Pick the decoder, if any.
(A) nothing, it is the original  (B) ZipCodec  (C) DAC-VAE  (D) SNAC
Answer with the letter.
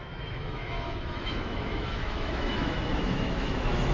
C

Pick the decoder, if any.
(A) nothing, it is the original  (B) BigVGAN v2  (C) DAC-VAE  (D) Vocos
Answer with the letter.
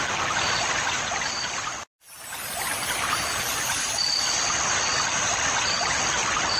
A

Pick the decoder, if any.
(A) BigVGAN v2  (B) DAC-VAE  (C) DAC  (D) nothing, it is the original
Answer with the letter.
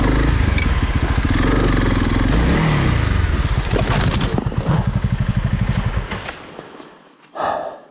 D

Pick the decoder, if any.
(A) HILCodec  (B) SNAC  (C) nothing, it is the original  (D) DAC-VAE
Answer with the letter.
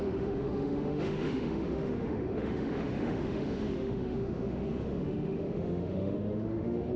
D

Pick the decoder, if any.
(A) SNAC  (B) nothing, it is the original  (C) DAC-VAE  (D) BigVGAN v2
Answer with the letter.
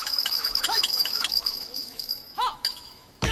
C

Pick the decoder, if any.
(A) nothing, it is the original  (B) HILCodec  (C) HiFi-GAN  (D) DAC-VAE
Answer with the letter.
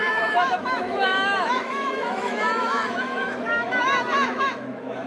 D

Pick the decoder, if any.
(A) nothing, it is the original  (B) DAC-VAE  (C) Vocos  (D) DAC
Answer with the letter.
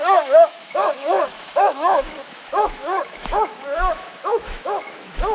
B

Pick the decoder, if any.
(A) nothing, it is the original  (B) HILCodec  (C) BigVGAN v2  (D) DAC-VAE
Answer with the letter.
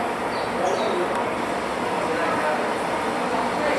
A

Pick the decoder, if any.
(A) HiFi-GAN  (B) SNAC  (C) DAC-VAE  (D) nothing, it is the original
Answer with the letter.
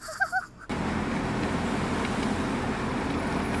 D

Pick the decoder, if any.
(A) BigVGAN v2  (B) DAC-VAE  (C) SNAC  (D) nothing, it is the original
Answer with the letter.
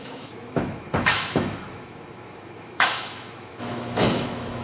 B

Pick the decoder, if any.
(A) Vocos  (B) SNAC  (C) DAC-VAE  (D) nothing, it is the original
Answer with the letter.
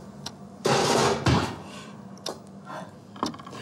D